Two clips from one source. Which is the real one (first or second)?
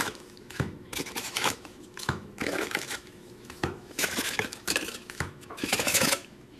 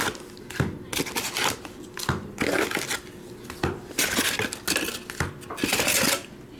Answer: second